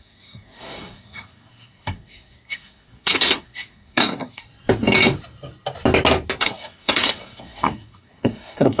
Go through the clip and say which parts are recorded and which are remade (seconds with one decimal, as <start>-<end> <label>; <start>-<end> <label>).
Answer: 0.0-4.4 remade; 4.4-6.4 recorded; 6.4-8.8 remade